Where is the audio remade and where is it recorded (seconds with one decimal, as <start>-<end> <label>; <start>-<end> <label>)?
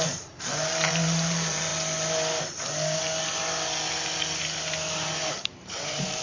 0.0-1.7 remade; 1.7-5.4 recorded; 5.4-6.2 remade